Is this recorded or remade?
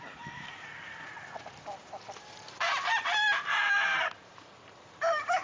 remade